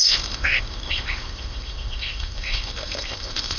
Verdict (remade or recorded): remade